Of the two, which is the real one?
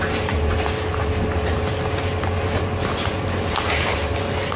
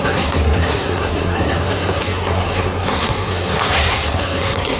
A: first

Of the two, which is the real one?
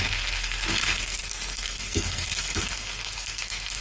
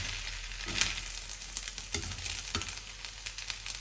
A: second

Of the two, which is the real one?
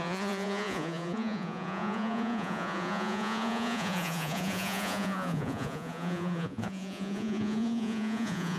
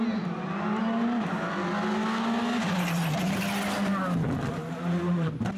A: second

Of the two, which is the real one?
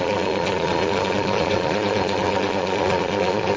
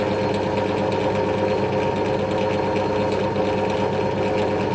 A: second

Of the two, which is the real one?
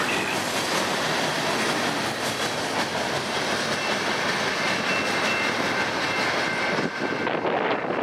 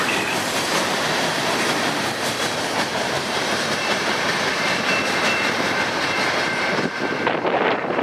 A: first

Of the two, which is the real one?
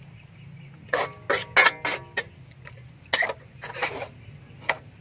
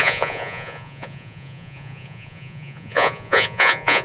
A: first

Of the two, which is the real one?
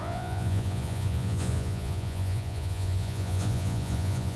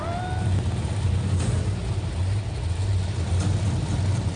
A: second